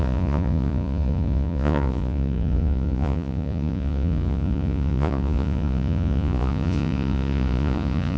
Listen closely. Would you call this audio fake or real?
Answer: fake